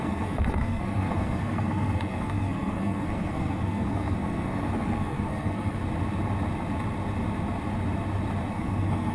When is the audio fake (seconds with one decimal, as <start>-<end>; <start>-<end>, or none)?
0.0-5.8; 8.5-9.1